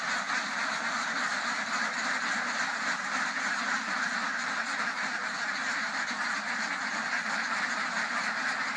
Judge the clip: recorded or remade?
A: recorded